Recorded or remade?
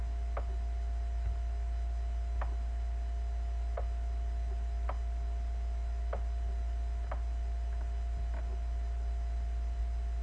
recorded